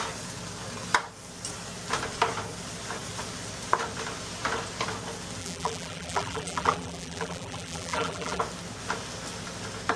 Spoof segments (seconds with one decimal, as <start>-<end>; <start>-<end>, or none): 5.4-8.4